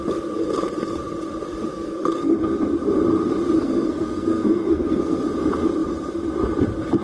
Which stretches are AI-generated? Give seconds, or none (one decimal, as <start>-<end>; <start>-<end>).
1.7-2.4; 3.6-5.2